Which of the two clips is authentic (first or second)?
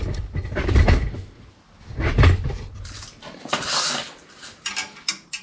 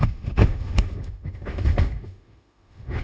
first